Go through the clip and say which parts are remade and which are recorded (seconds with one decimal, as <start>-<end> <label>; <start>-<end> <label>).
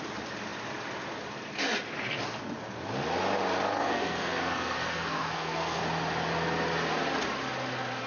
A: 0.0-3.8 recorded; 3.8-5.8 remade; 5.8-8.1 recorded